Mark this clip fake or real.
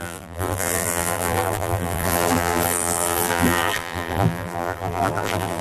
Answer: fake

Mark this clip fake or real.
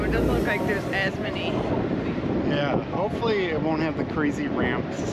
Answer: real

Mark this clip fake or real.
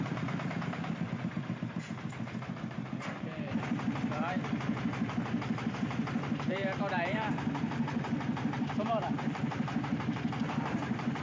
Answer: fake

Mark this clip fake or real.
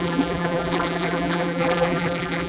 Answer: fake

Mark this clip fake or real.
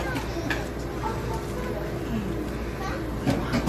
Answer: real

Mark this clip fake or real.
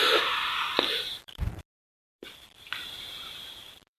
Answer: fake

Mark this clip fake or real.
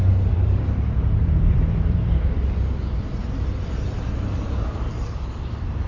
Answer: fake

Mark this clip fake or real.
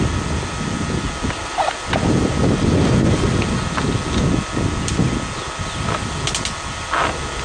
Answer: real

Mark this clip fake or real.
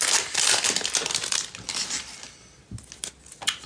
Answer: real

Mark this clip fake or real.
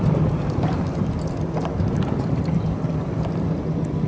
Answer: fake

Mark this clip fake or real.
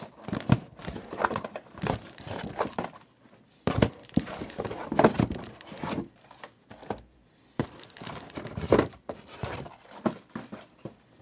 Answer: fake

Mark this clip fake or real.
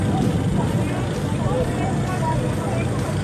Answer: real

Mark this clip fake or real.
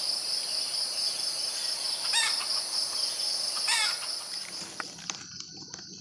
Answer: real